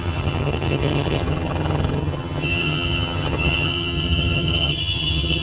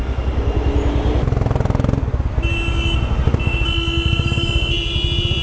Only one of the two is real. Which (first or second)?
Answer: second